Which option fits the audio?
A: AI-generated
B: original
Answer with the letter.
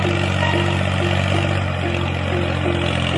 B